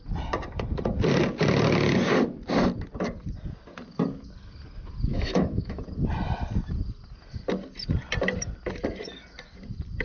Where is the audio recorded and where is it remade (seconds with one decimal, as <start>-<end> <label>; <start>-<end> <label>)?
0.0-5.1 recorded; 5.1-5.8 remade; 5.8-10.0 recorded